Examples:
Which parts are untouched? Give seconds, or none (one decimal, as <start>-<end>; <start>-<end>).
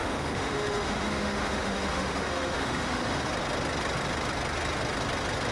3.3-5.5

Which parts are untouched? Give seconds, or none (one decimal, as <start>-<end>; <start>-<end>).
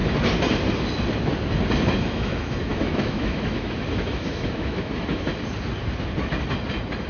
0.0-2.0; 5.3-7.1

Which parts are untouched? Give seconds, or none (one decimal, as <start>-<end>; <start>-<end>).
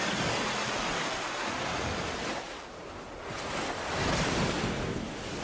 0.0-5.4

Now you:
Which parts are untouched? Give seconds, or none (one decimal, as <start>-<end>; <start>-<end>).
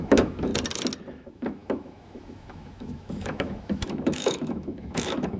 0.5-1.1